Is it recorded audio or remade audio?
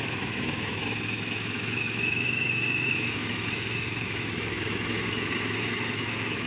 remade